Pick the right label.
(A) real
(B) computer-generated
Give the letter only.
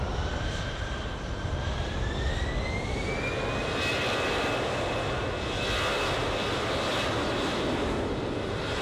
A